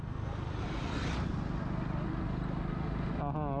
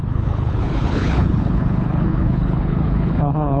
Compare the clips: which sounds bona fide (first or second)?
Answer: first